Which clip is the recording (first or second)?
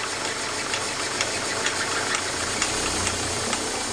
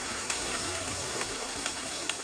first